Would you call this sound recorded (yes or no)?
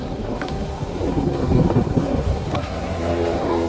no